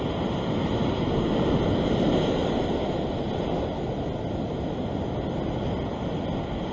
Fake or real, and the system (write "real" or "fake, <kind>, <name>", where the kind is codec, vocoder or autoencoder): real